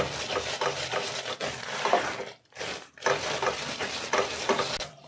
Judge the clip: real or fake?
fake